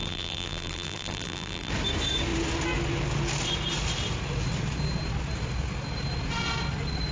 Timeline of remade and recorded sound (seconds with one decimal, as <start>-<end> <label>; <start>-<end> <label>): 0.0-1.7 remade; 1.7-7.1 recorded